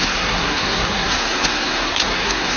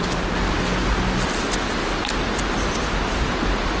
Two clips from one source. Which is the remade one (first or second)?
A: first